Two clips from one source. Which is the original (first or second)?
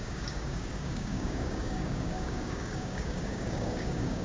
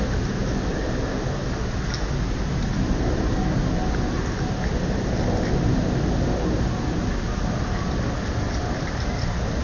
second